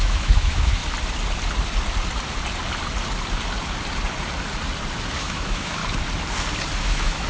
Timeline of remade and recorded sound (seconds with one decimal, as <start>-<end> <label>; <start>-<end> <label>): 0.0-0.8 remade; 0.8-5.2 recorded; 5.2-5.8 remade; 5.8-6.8 recorded; 6.8-7.3 remade